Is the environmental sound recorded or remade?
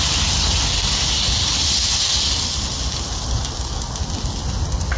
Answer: recorded